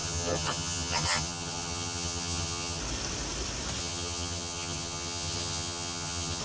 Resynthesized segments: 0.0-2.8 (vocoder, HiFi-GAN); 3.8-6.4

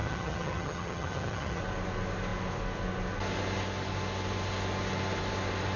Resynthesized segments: 0.0-1.6 (vocoder, HiFi-GAN)

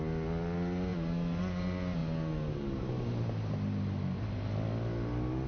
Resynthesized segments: none

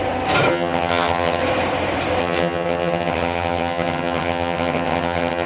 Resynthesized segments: 0.5-1.4 (vocoder, HiFi-GAN); 2.2-5.5

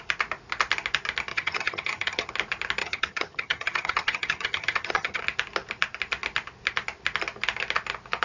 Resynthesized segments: 1.3-2.3 (vocoder, HiFi-GAN); 2.8-5.2

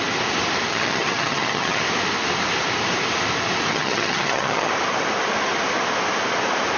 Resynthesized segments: 0.7-1.8 (vocoder, HiFi-GAN); 3.7-4.7